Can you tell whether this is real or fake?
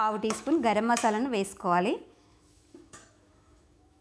fake